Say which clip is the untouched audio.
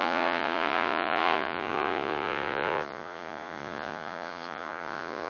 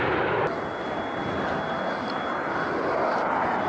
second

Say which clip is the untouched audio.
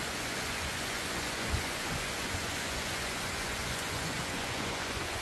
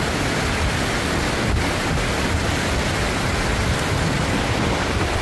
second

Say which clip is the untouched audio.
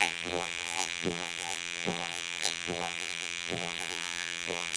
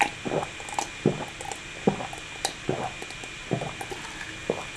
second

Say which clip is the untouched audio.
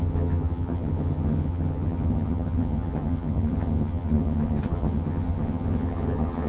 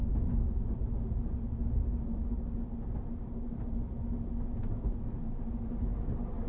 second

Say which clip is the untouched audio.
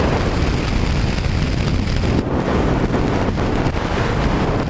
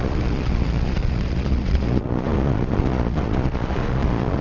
first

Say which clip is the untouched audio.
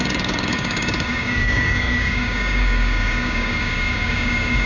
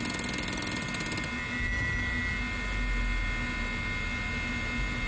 second